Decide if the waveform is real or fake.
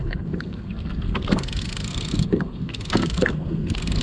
fake